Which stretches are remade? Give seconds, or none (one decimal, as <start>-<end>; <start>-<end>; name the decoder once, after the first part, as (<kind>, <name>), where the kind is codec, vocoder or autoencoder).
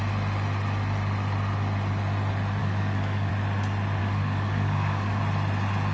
2.6-3.3 (codec, DAC); 4.0-5.2